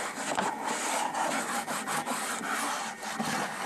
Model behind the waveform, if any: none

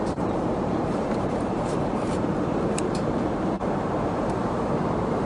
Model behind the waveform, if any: vocoder, BigVGAN v2